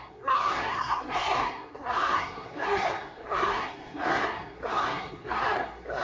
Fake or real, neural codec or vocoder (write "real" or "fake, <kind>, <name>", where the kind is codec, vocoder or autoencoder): fake, codec, SNAC